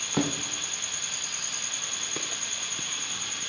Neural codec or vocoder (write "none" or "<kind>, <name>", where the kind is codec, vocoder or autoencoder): none